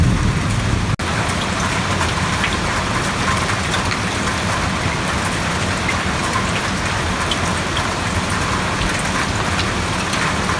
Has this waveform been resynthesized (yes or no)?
no